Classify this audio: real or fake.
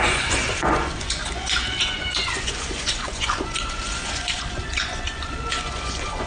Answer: fake